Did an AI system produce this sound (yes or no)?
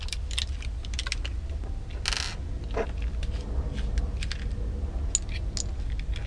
no